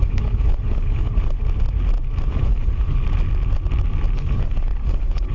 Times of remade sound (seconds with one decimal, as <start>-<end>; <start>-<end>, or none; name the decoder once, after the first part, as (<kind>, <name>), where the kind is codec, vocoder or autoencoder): 0.0-1.4 (codec, HILCodec); 2.3-3.0; 4.2-5.3